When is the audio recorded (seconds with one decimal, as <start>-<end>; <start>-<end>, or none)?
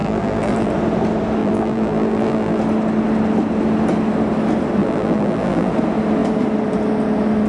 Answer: 0.7-1.4; 2.6-4.8; 5.7-7.5